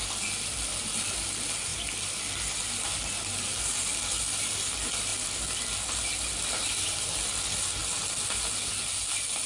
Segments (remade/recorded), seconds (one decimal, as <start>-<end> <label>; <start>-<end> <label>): 0.0-9.5 recorded